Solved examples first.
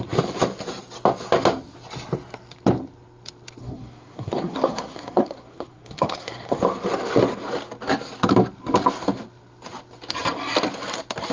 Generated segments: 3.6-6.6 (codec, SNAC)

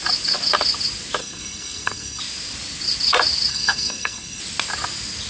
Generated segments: 1.2-2.2 (codec, SNAC); 3.5-4.4